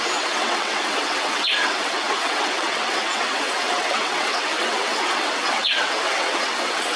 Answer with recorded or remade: remade